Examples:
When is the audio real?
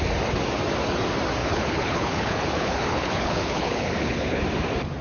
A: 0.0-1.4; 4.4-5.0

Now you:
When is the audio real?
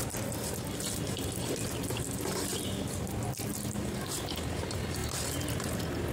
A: 0.0-3.7; 5.0-6.1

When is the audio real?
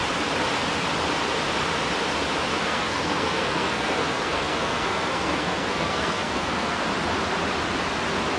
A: 0.0-2.5; 6.8-8.4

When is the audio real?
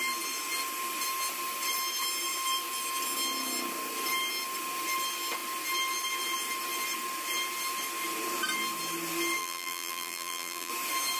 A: 0.0-9.4; 10.7-11.2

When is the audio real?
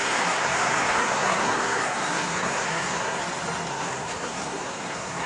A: 3.2-3.7